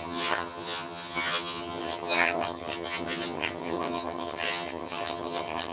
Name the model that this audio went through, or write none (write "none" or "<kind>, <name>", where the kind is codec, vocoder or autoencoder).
vocoder, HiFi-GAN